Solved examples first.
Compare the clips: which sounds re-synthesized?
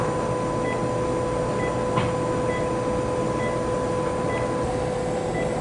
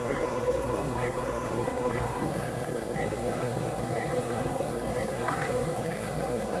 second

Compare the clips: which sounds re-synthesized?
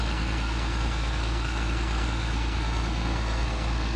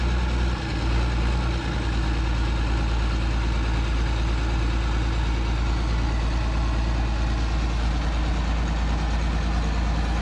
first